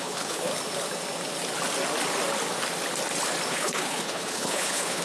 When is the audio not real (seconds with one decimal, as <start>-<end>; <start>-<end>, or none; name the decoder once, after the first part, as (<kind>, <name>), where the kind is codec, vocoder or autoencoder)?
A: 0.0-0.5 (codec, HILCodec); 3.5-5.0